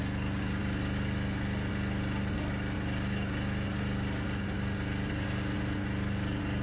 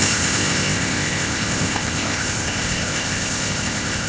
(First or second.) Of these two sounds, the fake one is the second